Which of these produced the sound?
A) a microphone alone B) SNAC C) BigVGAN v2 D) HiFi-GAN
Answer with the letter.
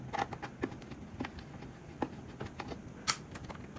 A